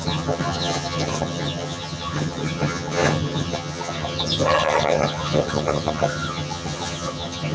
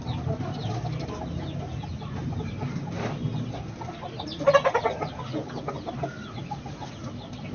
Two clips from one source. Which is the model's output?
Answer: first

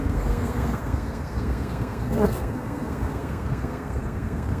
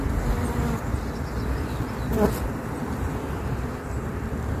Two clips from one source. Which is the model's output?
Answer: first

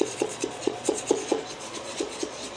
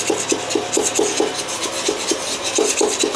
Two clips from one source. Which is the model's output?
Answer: first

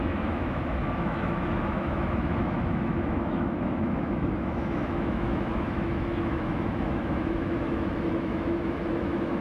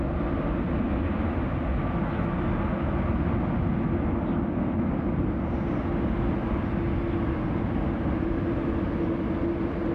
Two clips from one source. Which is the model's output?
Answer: first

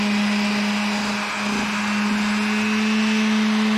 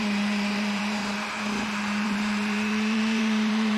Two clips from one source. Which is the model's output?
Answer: second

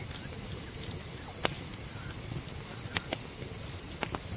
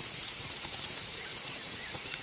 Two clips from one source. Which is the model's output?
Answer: second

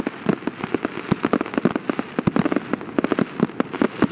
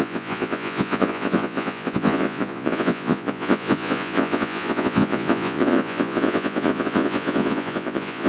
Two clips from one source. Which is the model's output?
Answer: second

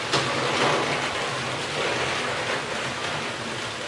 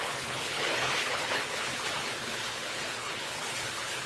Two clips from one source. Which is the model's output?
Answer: second